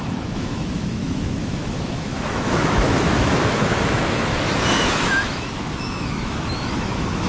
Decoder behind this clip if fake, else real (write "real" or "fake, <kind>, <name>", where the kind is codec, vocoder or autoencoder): fake, autoencoder, DAC-VAE